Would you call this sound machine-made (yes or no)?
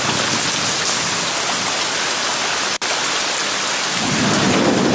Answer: no